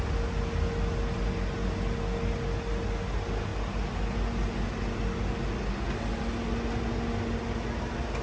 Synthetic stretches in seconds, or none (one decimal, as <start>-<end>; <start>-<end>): none